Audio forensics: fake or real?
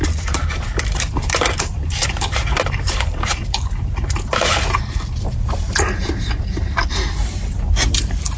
fake